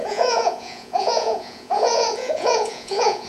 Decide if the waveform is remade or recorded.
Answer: remade